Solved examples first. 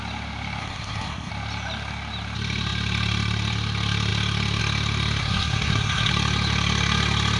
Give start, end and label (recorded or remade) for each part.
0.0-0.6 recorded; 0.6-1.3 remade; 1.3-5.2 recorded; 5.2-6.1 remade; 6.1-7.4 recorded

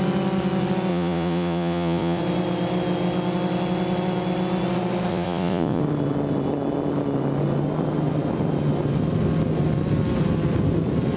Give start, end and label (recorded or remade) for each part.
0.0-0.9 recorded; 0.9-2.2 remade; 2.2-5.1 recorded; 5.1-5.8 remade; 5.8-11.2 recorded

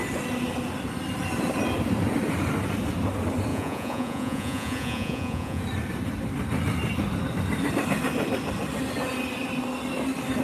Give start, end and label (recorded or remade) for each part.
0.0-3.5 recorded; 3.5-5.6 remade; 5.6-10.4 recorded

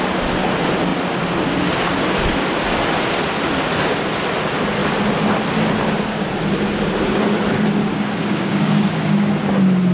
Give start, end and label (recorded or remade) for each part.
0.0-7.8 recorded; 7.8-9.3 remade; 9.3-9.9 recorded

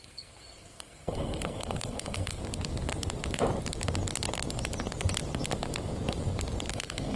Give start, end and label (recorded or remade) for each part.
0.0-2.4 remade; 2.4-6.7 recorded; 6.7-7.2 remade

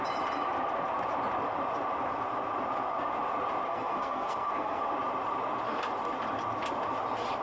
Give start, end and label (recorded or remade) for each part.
0.0-3.7 recorded; 3.7-4.9 remade; 4.9-7.4 recorded